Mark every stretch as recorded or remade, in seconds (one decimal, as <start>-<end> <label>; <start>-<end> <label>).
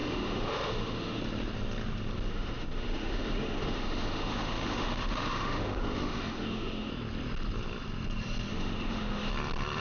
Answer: 0.0-1.2 remade; 1.2-2.3 recorded; 2.3-6.9 remade; 6.9-8.5 recorded; 8.5-9.3 remade; 9.3-9.8 recorded